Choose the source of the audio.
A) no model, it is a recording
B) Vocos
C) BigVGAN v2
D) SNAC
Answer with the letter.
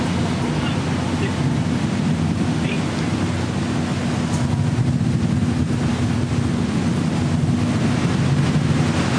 A